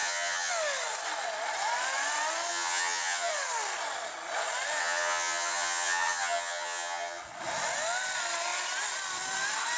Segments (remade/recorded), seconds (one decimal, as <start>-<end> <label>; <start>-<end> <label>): 0.0-0.5 remade; 0.5-2.5 recorded; 2.5-3.3 remade; 3.3-4.8 recorded; 4.8-7.2 remade; 7.2-9.8 recorded